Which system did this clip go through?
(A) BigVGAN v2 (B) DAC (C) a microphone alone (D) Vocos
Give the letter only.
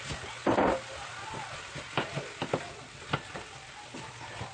C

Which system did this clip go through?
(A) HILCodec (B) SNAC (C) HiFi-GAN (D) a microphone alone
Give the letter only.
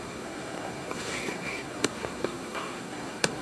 B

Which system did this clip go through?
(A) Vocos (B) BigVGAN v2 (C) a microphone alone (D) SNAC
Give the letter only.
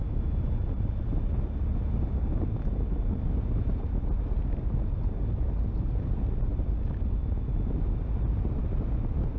C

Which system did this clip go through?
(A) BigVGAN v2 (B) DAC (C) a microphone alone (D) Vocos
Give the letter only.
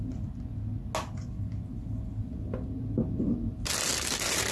C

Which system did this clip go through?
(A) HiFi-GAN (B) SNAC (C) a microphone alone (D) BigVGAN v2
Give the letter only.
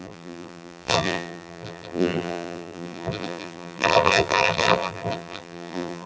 D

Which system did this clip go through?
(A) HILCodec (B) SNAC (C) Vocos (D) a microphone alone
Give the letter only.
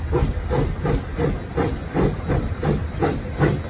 D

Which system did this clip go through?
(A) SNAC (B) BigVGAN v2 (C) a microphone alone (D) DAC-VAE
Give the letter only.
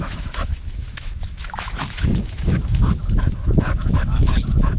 D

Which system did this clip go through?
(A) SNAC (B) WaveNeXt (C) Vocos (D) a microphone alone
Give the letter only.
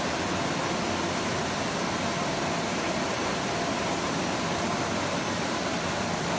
D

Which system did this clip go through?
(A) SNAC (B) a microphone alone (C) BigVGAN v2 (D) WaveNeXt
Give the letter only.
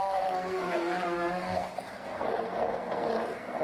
A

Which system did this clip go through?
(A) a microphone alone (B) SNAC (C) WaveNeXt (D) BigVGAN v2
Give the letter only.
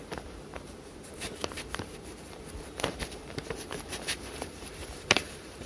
D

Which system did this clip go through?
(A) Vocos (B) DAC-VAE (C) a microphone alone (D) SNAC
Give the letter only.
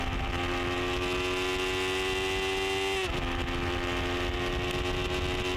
C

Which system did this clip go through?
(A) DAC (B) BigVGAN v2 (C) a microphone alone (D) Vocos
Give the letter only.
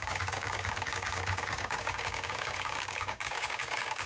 A